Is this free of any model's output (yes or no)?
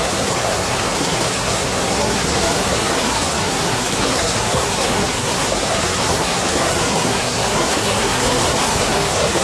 no